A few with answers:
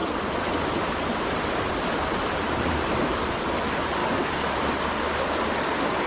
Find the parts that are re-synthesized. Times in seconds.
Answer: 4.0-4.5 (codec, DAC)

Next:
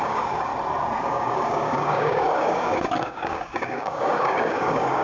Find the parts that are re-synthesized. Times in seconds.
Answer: 0.0-0.5 (codec, DAC); 1.0-5.0